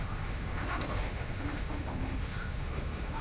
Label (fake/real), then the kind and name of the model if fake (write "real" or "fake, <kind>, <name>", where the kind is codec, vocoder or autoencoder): fake, autoencoder, DAC-VAE